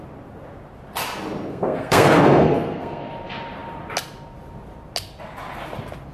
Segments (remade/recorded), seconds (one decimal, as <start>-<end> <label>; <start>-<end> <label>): 0.0-1.5 recorded; 1.5-3.0 remade; 3.0-6.1 recorded